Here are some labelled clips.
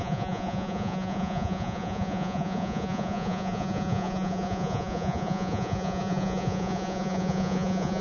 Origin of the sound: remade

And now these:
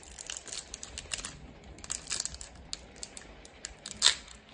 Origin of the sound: recorded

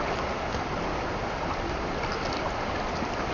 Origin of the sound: recorded